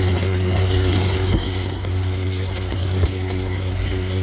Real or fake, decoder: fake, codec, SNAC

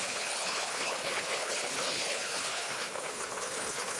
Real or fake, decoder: fake, codec, HILCodec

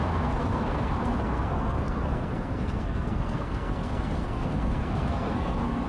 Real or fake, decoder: fake, codec, SNAC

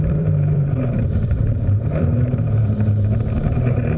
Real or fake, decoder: fake, vocoder, BigVGAN v2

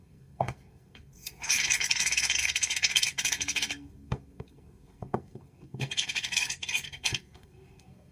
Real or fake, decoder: fake, codec, SNAC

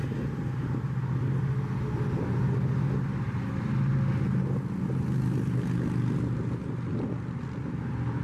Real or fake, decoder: real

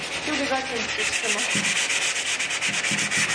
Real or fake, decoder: real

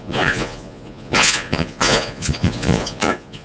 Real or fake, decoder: fake, vocoder, Vocos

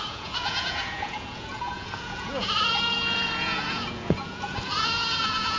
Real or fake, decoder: fake, vocoder, Vocos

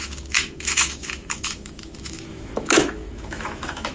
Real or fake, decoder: fake, autoencoder, DAC-VAE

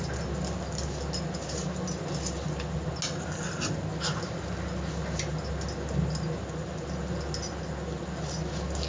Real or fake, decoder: real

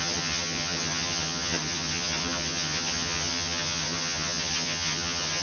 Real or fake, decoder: fake, vocoder, HiFi-GAN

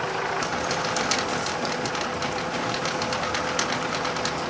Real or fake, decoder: real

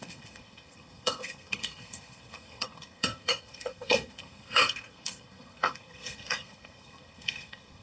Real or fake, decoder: fake, codec, SNAC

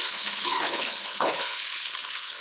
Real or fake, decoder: fake, codec, HILCodec